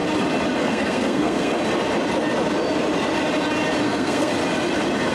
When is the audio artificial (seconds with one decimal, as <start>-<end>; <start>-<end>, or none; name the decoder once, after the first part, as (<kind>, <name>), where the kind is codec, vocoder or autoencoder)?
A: 0.6-1.5 (codec, SNAC); 3.8-4.3